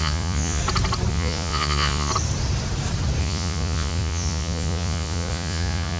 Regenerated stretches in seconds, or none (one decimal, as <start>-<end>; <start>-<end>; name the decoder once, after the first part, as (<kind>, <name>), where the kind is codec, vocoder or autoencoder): 0.0-0.6 (vocoder, Vocos); 1.1-2.1; 3.2-6.0